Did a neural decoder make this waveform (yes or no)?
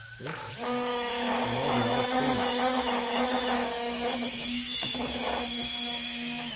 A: yes